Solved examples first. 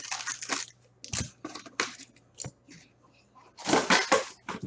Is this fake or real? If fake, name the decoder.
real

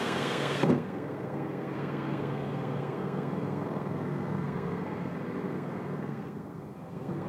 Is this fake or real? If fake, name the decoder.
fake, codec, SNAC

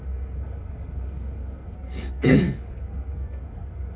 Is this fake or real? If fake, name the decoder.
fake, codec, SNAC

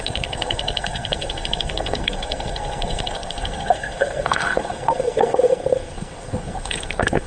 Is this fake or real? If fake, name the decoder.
fake, codec, SNAC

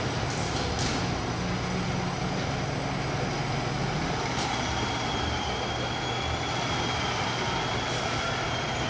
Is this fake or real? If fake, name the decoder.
real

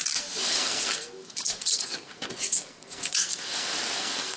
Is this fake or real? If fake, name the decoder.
fake, codec, SNAC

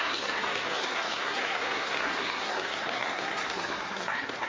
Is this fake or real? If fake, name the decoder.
fake, codec, SNAC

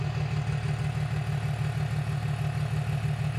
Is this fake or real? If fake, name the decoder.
real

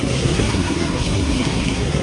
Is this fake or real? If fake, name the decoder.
fake, codec, SNAC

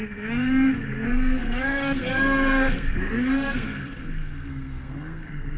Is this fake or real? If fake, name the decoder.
fake, codec, SNAC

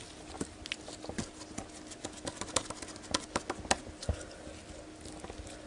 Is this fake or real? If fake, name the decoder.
real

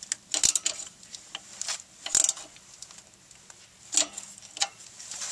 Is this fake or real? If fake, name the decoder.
real